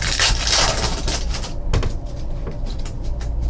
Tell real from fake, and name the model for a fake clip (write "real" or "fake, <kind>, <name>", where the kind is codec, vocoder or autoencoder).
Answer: real